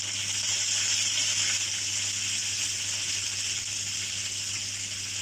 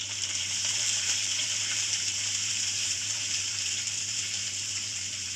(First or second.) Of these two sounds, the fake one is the second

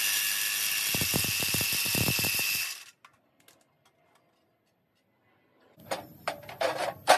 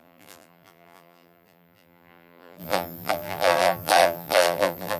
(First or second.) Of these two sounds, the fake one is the second